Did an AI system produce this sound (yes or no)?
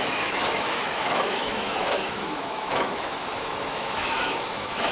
yes